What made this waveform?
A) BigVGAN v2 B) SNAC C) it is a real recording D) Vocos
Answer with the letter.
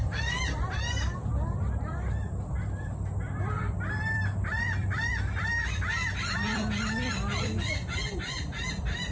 A